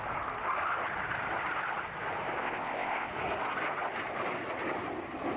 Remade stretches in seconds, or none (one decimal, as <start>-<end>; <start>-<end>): 2.4-3.1